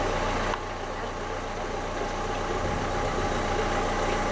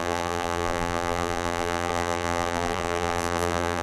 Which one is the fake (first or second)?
second